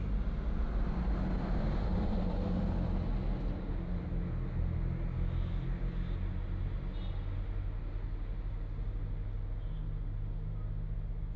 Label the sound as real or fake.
real